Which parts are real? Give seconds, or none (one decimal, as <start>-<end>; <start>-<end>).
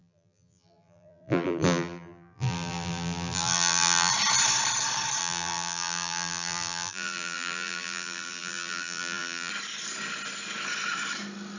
4.1-5.2; 9.5-11.6